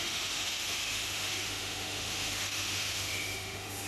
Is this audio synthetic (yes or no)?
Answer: yes